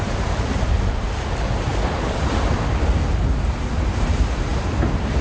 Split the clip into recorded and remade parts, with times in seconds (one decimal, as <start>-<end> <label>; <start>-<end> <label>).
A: 0.0-1.7 remade; 1.7-4.0 recorded; 4.0-5.2 remade